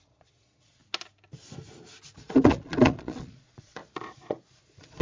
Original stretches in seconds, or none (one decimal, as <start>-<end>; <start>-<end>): 0.8-2.2